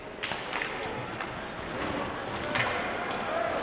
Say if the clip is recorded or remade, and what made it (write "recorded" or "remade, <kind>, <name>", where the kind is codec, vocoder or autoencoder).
recorded